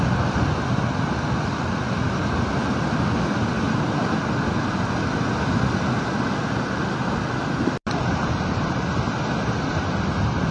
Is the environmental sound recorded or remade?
recorded